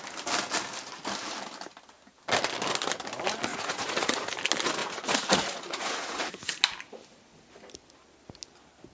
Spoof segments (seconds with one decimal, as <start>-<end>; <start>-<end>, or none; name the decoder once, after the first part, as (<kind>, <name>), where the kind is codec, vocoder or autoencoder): 3.5-4.3 (vocoder, Vocos); 4.8-6.5